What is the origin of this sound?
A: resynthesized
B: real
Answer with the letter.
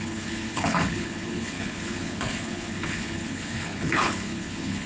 A